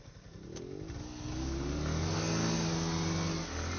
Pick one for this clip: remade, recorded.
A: recorded